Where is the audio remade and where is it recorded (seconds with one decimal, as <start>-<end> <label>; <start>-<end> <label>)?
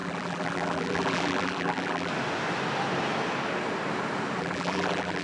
0.0-2.1 remade; 2.1-4.4 recorded; 4.4-5.2 remade